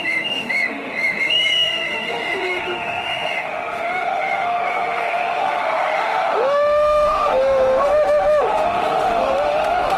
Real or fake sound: fake